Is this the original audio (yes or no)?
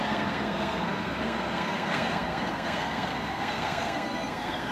no